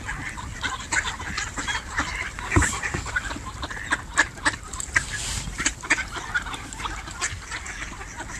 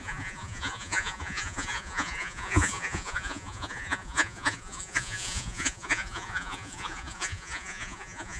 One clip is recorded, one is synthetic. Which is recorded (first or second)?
first